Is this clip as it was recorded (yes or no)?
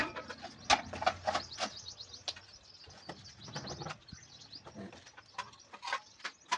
yes